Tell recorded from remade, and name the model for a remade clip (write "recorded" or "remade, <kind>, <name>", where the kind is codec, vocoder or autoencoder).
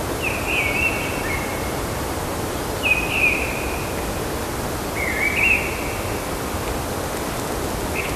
recorded